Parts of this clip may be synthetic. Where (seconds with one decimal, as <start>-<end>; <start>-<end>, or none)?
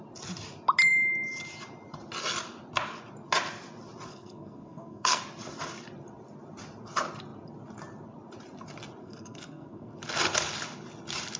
4.1-5.2; 9.0-9.9